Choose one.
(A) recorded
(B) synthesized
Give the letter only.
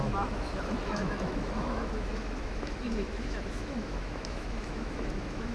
B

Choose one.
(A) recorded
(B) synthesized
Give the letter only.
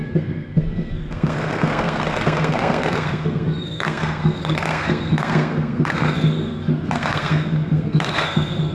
B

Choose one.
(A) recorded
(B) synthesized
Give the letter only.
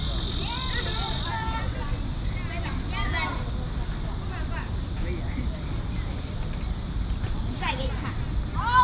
A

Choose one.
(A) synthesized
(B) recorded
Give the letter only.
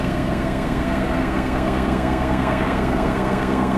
A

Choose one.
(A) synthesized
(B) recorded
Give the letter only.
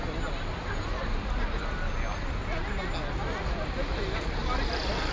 B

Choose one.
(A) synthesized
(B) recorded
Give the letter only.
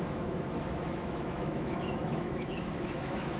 A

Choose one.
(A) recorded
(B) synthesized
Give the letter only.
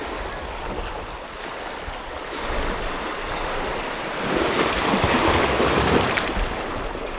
A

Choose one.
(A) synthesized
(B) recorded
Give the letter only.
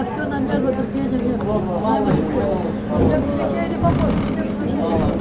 B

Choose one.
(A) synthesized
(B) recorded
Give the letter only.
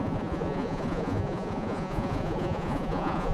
A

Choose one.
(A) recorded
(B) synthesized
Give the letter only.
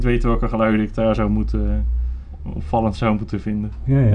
A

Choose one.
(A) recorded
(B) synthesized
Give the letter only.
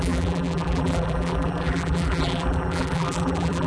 B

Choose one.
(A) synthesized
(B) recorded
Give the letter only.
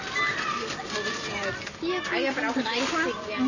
B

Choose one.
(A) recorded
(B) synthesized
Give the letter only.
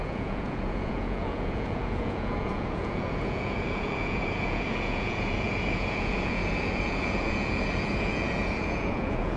B